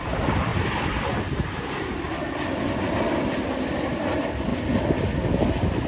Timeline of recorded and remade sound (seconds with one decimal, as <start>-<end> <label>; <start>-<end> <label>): 0.0-0.5 remade; 0.5-4.0 recorded; 4.0-4.5 remade; 4.5-5.9 recorded